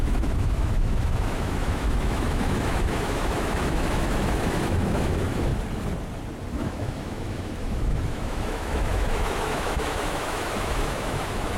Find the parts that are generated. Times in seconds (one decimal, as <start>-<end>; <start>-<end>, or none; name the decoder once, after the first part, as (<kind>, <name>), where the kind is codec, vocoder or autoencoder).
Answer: 0.0-5.5 (autoencoder, DAC-VAE); 6.5-11.6